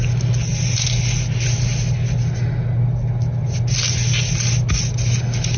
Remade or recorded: recorded